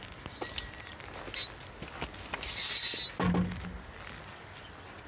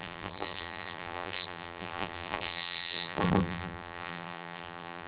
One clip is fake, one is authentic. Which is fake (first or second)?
second